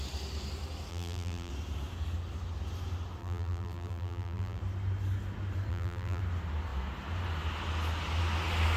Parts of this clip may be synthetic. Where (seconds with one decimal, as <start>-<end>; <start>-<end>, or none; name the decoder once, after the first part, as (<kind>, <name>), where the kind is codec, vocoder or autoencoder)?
0.9-1.5 (vocoder, BigVGAN v2); 3.2-4.6; 5.7-6.2